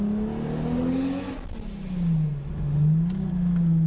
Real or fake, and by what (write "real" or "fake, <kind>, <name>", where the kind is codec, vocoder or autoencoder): real